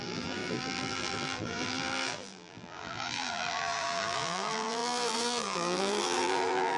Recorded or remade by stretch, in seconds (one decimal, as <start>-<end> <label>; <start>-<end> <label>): 0.0-6.8 remade